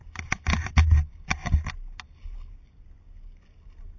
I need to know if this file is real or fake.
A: real